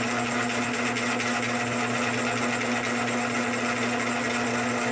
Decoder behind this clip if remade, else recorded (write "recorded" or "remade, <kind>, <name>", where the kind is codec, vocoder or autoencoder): recorded